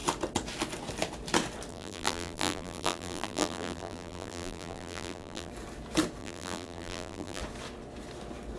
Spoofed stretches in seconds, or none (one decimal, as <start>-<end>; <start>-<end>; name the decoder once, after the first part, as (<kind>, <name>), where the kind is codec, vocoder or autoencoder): 1.7-5.5 (vocoder, BigVGAN v2); 6.2-7.4